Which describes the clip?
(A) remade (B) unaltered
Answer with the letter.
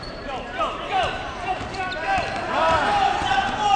A